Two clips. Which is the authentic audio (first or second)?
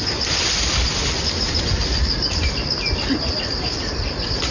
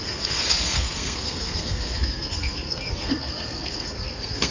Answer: first